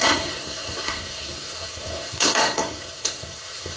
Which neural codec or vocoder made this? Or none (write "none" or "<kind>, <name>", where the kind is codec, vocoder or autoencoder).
codec, SNAC